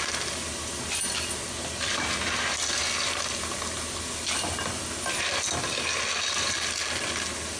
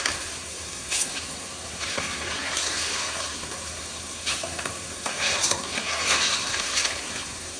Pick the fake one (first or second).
second